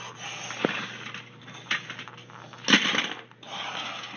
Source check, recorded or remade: recorded